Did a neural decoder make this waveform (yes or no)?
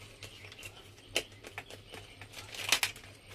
no